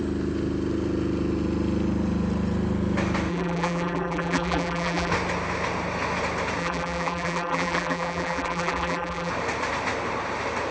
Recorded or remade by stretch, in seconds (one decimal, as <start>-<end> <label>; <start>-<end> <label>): 0.0-3.3 recorded; 3.3-5.1 remade; 5.1-6.6 recorded; 6.6-9.3 remade; 9.3-10.7 recorded